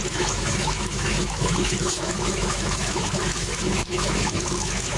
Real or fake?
fake